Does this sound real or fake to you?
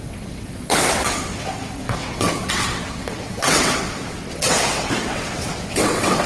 fake